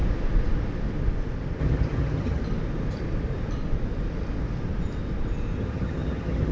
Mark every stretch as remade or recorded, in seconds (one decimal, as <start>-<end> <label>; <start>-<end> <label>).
0.0-1.6 recorded; 1.6-2.4 remade; 2.4-5.6 recorded; 5.6-6.5 remade